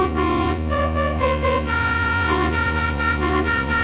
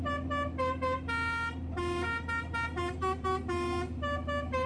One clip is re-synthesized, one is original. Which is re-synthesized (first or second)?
first